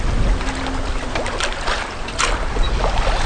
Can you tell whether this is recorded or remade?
recorded